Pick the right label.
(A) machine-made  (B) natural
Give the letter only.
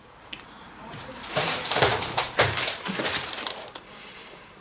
A